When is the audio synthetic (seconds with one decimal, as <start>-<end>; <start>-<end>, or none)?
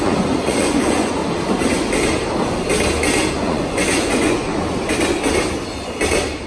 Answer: 0.0-1.2; 3.3-4.5